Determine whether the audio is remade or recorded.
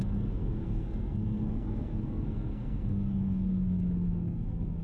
remade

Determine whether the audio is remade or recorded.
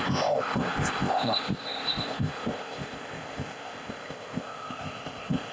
remade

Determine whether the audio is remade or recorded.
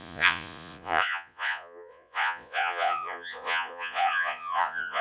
remade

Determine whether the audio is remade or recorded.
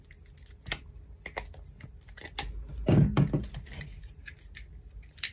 recorded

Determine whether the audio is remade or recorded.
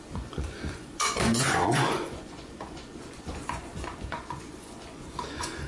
remade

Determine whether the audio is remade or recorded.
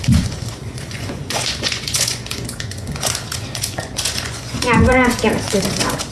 remade